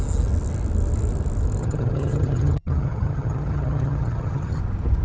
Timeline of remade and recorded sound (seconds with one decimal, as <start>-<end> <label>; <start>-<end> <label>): 0.0-1.6 recorded; 1.6-4.6 remade; 4.6-5.0 recorded

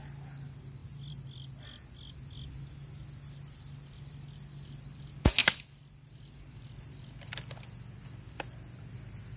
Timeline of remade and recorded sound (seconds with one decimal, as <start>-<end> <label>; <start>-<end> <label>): 0.0-0.8 recorded; 0.8-1.5 remade; 1.5-5.4 recorded; 5.4-7.3 remade; 7.3-9.4 recorded

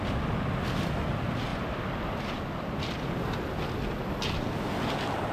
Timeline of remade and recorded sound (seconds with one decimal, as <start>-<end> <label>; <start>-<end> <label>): 0.0-5.3 recorded

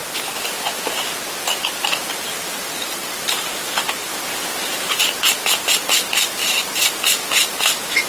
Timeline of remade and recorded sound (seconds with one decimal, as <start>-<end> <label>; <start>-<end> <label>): 0.0-2.1 recorded; 2.1-4.1 remade; 4.1-5.0 recorded; 5.0-8.1 remade

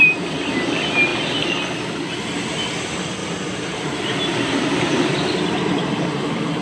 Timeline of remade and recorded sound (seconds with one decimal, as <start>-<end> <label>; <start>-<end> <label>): 0.0-3.2 recorded; 3.2-5.4 remade; 5.4-6.6 recorded

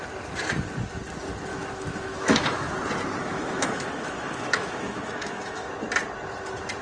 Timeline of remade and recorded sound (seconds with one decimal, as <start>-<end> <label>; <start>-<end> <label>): 0.0-1.5 recorded; 1.5-2.7 remade; 2.7-3.2 recorded; 3.2-5.7 remade; 5.7-6.8 recorded

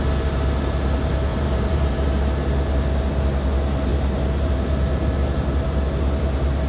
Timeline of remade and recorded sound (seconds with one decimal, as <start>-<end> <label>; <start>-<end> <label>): 0.0-1.3 recorded; 1.3-1.9 remade; 1.9-3.9 recorded; 3.9-5.5 remade; 5.5-6.7 recorded